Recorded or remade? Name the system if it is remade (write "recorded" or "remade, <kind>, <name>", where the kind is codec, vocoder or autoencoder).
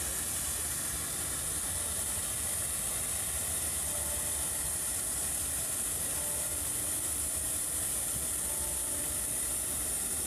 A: recorded